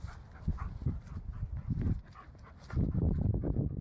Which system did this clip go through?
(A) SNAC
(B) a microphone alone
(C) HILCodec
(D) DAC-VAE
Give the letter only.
B